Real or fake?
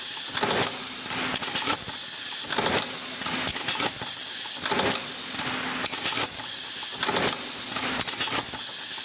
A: real